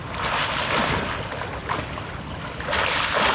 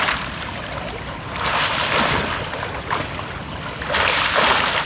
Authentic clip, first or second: first